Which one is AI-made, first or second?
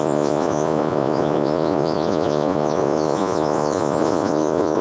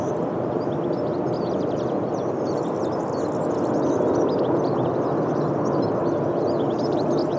first